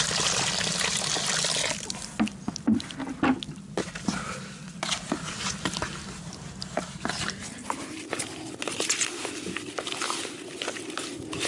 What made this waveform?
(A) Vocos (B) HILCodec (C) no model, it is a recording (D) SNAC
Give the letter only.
C